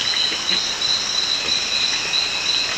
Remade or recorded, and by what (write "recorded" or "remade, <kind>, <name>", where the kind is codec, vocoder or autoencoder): recorded